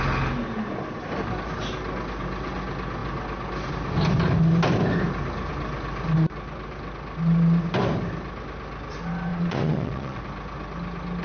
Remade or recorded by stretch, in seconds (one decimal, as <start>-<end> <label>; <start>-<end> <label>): 0.0-9.3 recorded; 9.3-10.2 remade; 10.2-11.2 recorded